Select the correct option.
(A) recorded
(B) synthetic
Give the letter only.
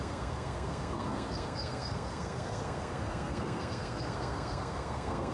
B